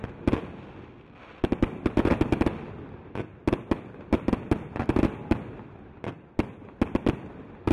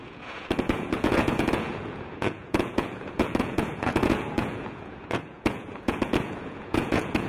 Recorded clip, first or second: first